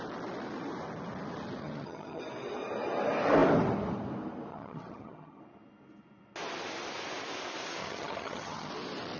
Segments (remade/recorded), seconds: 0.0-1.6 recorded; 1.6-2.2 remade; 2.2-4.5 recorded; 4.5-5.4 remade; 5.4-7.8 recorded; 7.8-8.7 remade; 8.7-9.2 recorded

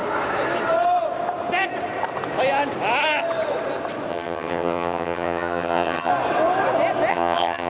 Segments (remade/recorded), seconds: 0.0-4.1 recorded; 4.1-6.1 remade; 6.1-7.1 recorded; 7.1-7.7 remade

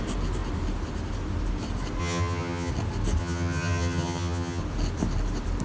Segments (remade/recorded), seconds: 0.0-2.0 recorded; 2.0-2.7 remade; 2.7-3.2 recorded; 3.2-4.6 remade; 4.6-5.6 recorded

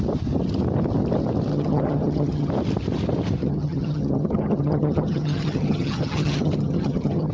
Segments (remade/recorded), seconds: 0.0-1.5 recorded; 1.5-2.5 remade; 2.5-3.4 recorded; 3.4-7.3 remade

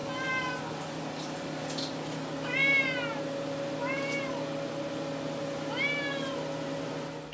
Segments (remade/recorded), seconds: 0.0-7.3 recorded